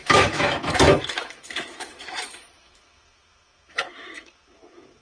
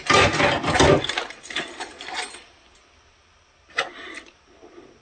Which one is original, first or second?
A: second